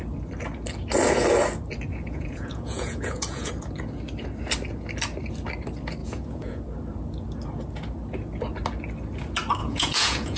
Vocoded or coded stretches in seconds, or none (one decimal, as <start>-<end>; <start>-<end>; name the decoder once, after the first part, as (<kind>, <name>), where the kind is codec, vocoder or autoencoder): 1.9-3.5 (vocoder, Vocos); 6.0-6.6; 9.6-10.4